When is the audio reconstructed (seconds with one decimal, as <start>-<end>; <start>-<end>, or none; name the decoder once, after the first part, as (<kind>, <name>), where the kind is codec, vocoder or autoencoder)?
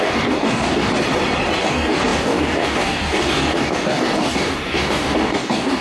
0.0-0.9 (codec, DAC); 1.6-5.8